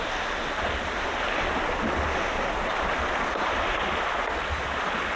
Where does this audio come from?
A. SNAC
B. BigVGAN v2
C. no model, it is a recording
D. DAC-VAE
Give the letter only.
C